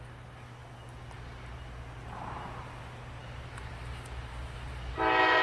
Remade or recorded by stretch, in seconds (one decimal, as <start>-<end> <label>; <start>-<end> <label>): 0.0-5.4 recorded